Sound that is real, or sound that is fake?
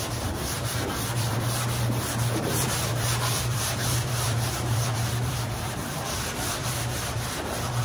fake